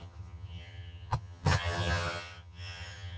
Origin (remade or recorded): remade